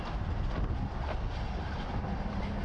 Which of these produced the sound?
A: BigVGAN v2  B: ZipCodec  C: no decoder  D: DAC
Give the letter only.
C